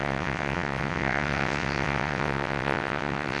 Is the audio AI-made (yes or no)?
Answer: yes